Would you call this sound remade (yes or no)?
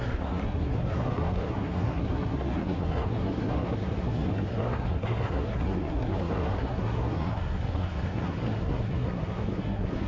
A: yes